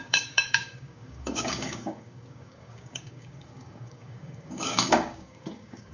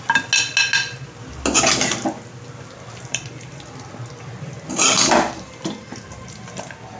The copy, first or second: first